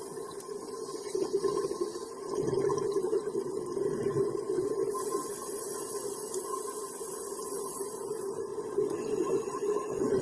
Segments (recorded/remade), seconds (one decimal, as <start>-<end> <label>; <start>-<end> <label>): 0.0-8.5 recorded; 8.5-10.2 remade